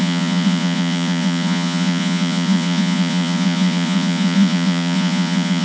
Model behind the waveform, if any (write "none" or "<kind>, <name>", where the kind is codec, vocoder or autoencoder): vocoder, Vocos